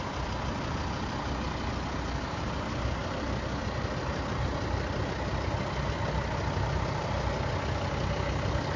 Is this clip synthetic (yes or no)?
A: no